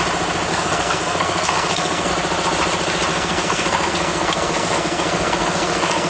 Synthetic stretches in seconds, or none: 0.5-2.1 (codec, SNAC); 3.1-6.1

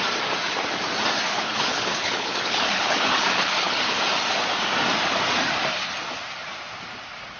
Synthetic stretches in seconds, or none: 1.3-4.0 (codec, HILCodec)

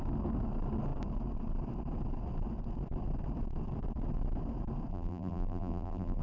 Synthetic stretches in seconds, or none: 4.9-6.2 (vocoder, BigVGAN v2)

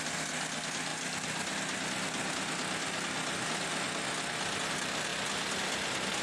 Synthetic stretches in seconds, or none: none

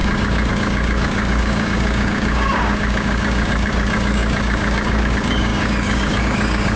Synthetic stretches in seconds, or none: 0.0-6.8 (codec, DAC)